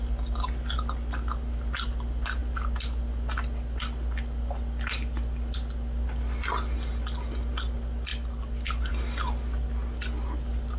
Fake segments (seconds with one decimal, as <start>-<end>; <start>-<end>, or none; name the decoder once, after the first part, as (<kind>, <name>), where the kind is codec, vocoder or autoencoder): none